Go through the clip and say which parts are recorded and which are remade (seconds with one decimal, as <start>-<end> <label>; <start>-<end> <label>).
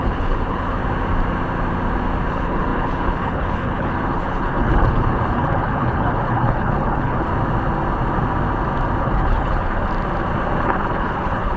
0.0-0.8 remade; 0.8-2.3 recorded; 2.3-7.3 remade; 7.3-9.0 recorded; 9.0-9.9 remade; 9.9-10.6 recorded; 10.6-11.6 remade